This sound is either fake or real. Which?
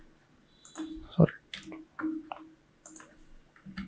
real